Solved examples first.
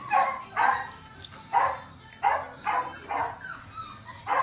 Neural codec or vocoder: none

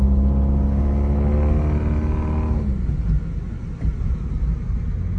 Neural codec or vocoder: none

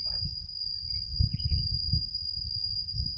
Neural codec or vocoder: vocoder, BigVGAN v2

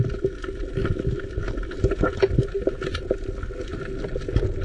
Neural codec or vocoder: none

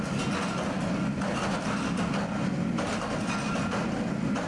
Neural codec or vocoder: none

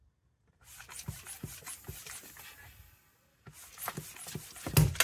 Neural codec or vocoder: none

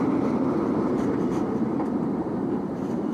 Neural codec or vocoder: vocoder, BigVGAN v2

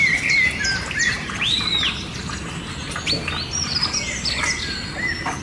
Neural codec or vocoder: none